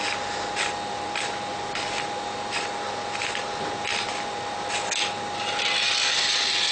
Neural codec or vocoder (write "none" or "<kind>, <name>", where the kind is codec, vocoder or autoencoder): none